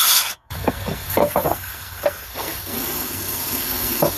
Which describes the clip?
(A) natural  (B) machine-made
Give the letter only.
B